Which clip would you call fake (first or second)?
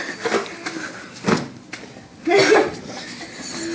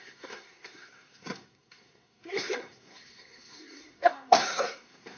second